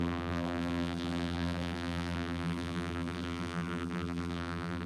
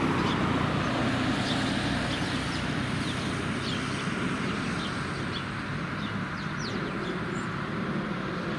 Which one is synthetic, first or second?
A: first